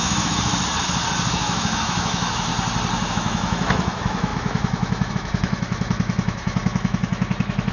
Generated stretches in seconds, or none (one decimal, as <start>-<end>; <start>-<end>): 0.0-0.5; 1.3-2.5; 3.1-7.7